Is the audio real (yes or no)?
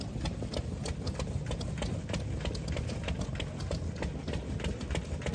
yes